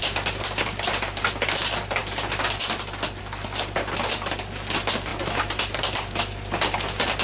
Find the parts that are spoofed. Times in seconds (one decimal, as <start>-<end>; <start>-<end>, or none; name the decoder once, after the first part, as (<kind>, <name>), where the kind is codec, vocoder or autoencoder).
5.1-5.8 (vocoder, BigVGAN v2)